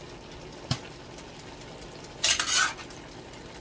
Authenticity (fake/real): real